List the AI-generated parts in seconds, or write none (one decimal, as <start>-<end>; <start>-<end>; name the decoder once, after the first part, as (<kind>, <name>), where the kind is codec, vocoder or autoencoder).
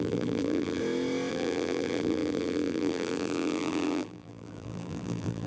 0.0-0.8 (vocoder, BigVGAN v2); 1.3-5.5